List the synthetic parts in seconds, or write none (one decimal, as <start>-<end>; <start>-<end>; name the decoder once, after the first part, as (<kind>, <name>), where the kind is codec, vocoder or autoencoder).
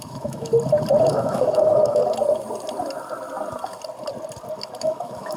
0.0-0.5 (autoencoder, DAC-VAE); 1.1-2.0; 4.8-5.4